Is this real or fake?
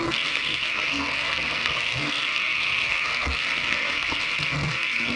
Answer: fake